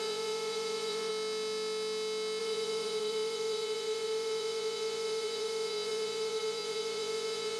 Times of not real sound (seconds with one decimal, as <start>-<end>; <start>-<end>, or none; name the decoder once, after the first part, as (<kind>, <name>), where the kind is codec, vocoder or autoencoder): 0.0-1.1 (vocoder, Vocos); 2.4-7.6